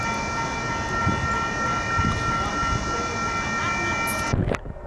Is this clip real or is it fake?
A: real